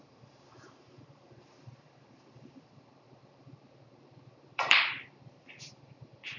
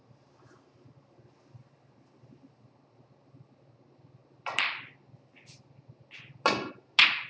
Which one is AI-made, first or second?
first